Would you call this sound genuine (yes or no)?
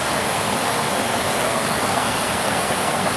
no